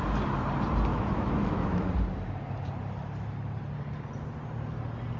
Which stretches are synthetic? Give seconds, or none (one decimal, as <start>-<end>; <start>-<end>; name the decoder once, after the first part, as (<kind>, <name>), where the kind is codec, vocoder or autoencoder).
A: 0.9-1.9 (autoencoder, DAC-VAE)

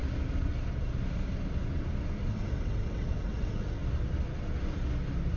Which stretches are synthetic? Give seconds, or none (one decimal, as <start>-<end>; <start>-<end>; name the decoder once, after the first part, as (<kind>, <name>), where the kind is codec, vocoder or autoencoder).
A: 2.3-3.8 (vocoder, WaveNeXt)

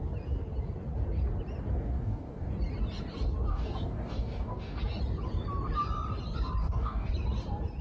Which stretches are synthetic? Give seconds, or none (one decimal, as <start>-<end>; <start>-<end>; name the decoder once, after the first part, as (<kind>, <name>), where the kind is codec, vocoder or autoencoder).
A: 1.7-2.5 (codec, DAC); 3.5-4.8; 6.6-7.1

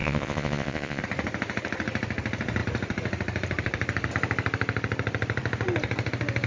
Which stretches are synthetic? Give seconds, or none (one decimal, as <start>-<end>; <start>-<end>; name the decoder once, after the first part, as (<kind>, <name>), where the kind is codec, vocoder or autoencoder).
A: 0.0-1.0 (vocoder, Vocos)